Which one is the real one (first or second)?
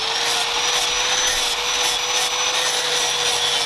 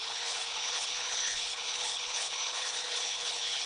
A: first